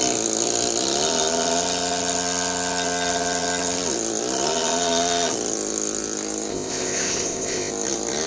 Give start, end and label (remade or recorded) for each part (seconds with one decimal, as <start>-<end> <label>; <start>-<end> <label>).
0.0-6.5 recorded; 6.5-7.7 remade; 7.7-8.3 recorded